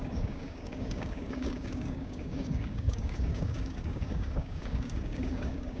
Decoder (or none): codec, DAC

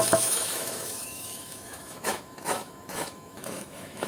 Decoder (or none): autoencoder, DAC-VAE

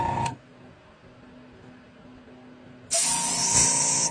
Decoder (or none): none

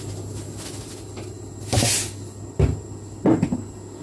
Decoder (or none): none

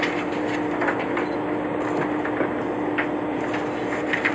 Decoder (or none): none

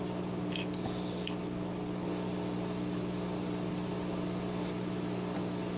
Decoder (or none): none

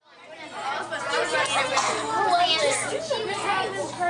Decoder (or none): none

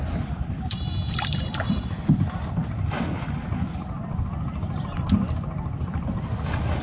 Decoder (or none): none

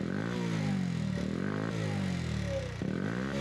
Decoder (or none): none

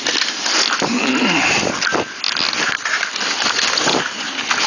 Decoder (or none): none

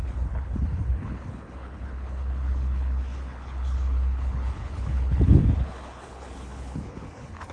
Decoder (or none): codec, HILCodec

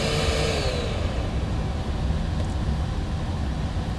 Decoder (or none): none